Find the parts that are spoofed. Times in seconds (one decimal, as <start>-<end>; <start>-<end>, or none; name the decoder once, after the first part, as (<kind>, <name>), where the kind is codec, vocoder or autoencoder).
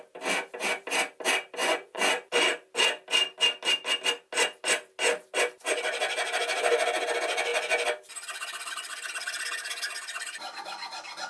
1.6-2.3 (vocoder, Vocos)